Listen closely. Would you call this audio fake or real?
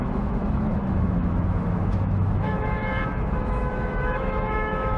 fake